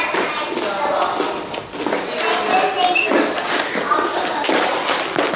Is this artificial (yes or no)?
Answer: no